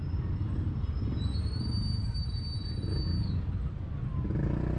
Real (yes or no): yes